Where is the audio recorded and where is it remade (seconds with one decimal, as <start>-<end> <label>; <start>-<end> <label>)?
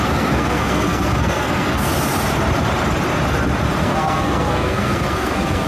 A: 0.0-1.9 remade; 1.9-3.8 recorded; 3.8-5.7 remade